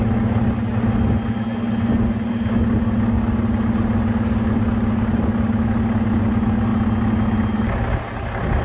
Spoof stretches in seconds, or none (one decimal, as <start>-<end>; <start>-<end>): none